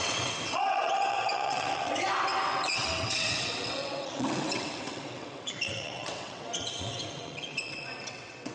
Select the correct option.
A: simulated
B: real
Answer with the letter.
A